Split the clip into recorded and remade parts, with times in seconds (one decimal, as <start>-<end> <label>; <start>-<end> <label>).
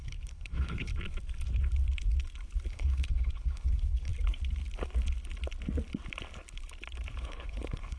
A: 0.0-0.9 remade; 0.9-2.7 recorded; 2.7-4.1 remade; 4.1-7.2 recorded; 7.2-8.0 remade